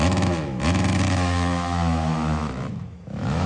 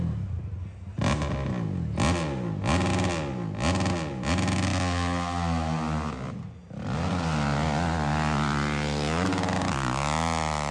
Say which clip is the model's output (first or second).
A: first